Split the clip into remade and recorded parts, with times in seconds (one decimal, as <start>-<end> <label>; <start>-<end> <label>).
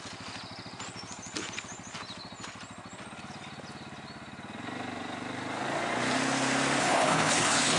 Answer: 0.0-6.8 recorded; 6.8-7.8 remade